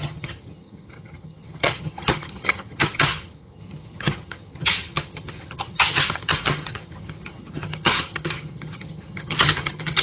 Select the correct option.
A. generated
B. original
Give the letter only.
A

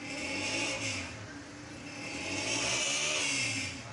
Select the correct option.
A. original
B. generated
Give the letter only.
A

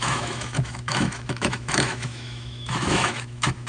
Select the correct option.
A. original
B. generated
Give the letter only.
B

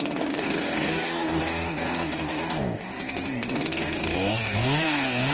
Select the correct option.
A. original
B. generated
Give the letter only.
B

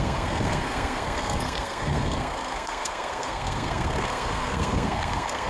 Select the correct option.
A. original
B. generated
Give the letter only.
B